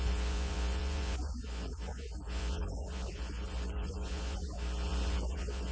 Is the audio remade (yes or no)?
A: yes